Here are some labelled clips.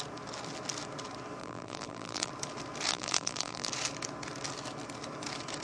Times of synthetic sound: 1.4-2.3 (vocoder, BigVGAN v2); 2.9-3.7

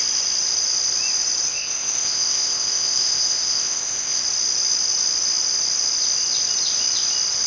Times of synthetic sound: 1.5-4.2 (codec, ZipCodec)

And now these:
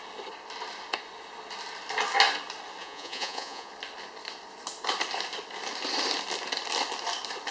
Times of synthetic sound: 2.8-3.7 (vocoder, Vocos)

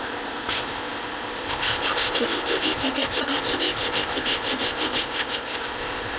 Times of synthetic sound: 0.0-6.2 (codec, ZipCodec)

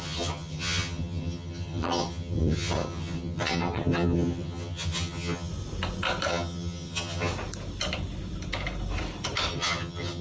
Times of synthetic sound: 0.0-5.5 (vocoder, HiFi-GAN); 6.3-7.3; 9.5-10.2

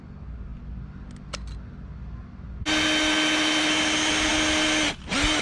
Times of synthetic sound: none